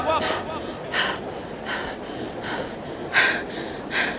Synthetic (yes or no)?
no